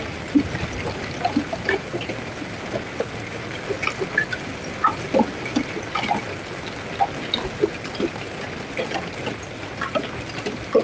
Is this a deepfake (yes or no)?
no